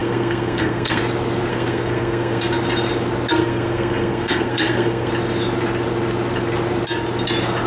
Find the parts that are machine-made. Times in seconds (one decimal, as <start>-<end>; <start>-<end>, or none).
0.0-1.0; 1.5-2.4; 3.3-5.1